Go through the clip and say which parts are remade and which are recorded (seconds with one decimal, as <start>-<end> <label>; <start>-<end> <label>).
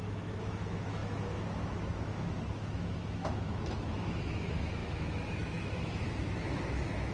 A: 0.0-7.1 remade